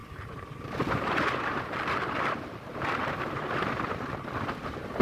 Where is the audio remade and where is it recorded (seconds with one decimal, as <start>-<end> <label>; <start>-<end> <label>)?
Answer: 0.0-1.7 remade; 1.7-2.7 recorded; 2.7-3.9 remade; 3.9-5.0 recorded